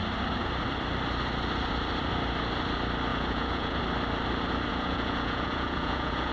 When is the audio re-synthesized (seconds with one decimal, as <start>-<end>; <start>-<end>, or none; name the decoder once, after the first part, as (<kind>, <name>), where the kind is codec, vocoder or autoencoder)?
3.1-3.8 (vocoder, Vocos); 4.7-6.3